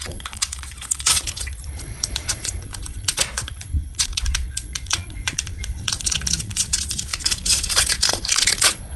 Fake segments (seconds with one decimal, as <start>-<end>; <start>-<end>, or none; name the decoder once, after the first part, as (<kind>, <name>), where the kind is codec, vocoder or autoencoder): 0.0-9.0 (vocoder, Vocos)